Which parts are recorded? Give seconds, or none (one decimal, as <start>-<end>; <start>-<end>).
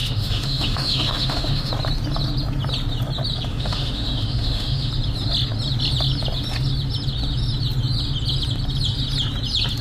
1.7-3.5; 4.9-9.8